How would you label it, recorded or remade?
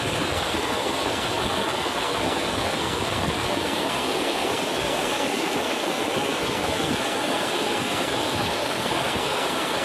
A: remade